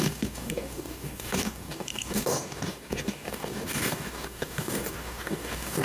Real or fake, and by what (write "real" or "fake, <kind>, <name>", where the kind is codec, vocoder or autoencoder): fake, codec, DAC